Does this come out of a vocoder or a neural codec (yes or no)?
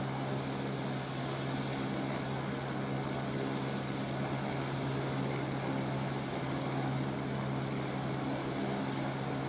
no